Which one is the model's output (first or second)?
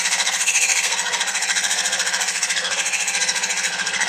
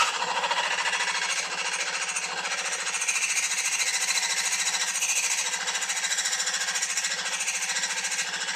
first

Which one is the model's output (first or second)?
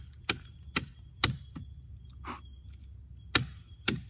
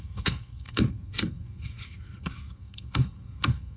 second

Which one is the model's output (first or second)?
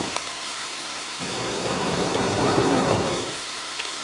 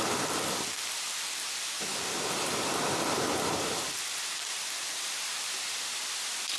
first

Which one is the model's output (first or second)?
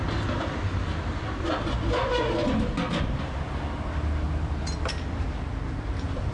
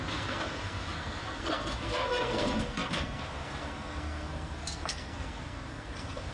second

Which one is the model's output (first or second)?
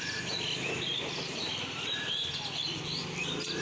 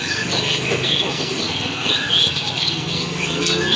second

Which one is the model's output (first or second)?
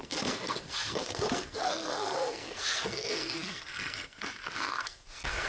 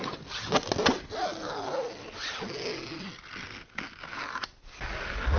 first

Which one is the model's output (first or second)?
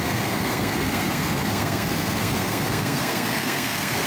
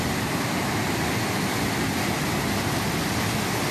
first